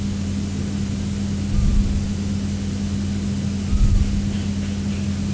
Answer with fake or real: real